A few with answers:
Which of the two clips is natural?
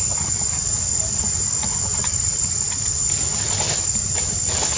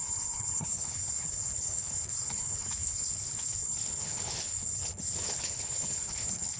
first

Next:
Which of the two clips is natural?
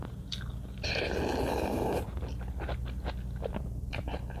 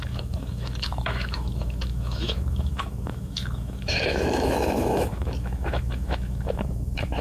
first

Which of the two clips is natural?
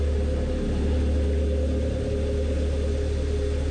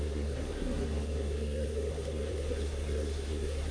first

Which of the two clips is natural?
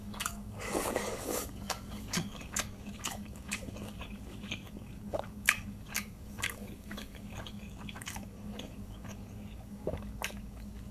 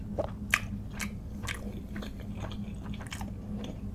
second